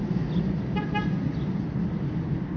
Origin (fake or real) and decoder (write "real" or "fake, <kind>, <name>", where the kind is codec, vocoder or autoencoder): real